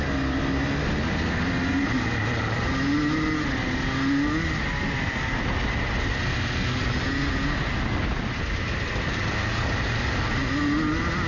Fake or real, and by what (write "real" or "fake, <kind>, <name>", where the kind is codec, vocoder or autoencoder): real